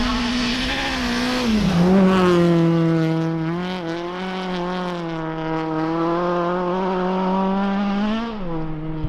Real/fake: real